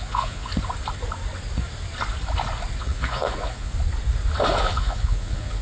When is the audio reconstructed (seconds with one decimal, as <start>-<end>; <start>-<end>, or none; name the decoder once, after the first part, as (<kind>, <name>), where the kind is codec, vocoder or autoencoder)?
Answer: 0.0-0.5 (vocoder, Vocos); 2.8-3.7; 4.6-5.6